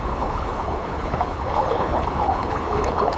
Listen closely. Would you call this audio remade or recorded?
remade